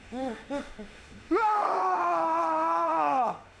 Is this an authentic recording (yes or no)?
no